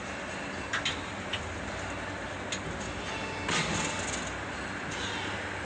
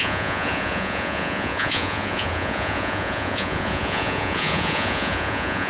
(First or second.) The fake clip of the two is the second